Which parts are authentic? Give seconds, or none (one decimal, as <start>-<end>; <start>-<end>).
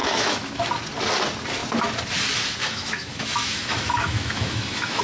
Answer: 0.6-2.6